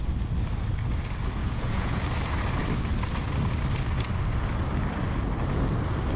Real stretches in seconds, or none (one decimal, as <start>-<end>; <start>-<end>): 0.0-1.4; 2.0-6.2